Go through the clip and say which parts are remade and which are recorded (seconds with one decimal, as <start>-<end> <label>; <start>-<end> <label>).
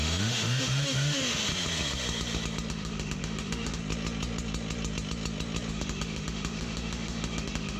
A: 0.0-1.5 remade; 1.5-2.7 recorded; 2.7-3.8 remade; 3.8-5.7 recorded; 5.7-7.8 remade